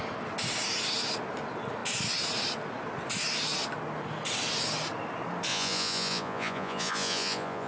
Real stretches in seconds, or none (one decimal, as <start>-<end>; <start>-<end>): 0.0-5.5